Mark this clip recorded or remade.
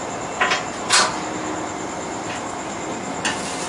recorded